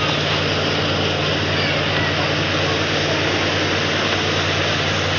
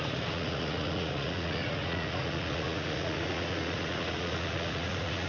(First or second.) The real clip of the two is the first